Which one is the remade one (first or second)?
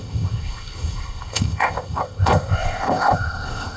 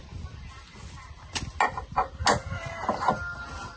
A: first